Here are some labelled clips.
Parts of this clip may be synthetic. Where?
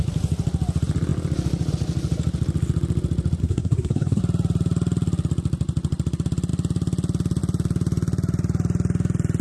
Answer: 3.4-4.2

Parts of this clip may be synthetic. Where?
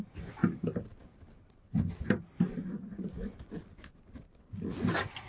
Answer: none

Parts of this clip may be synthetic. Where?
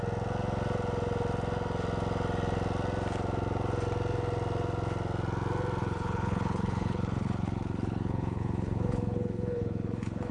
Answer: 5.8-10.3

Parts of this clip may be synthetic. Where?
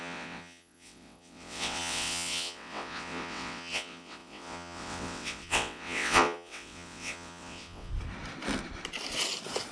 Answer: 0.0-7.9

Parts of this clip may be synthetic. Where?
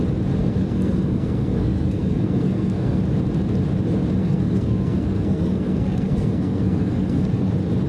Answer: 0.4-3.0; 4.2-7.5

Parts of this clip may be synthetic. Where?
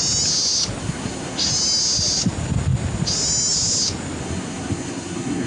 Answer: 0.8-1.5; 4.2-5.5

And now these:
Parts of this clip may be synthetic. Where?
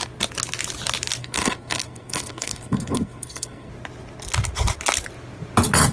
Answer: 1.2-3.7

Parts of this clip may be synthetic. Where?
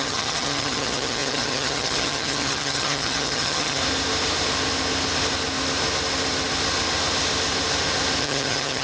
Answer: 0.0-3.8; 8.2-8.8